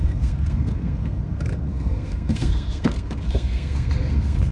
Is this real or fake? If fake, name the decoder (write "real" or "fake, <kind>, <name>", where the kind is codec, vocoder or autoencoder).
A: fake, codec, SNAC